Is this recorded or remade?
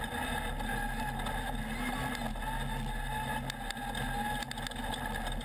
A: recorded